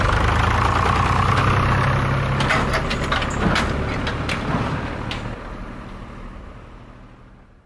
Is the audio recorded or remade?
recorded